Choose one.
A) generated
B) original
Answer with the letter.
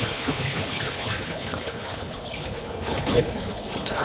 A